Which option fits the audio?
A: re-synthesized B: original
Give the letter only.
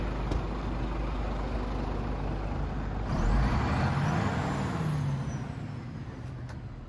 B